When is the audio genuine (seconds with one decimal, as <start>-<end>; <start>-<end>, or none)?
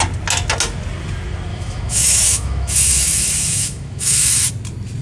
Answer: 0.0-1.5; 4.5-5.0